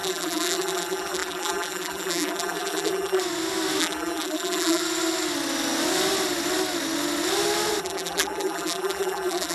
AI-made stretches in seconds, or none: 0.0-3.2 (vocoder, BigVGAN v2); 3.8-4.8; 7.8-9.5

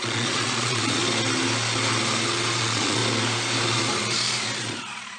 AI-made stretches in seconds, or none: 0.0-1.0 (vocoder, Vocos); 2.6-3.0; 4.6-5.2

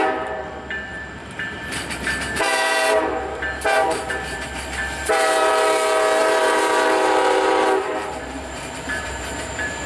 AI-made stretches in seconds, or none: 0.9-5.5 (vocoder, BigVGAN v2); 6.2-9.9

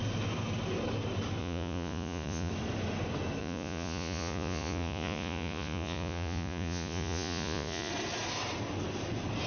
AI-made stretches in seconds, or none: 1.4-2.5 (vocoder, Vocos); 3.4-7.9

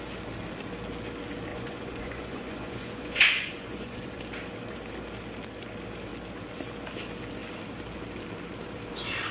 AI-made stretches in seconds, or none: 1.5-4.2 (vocoder, Vocos)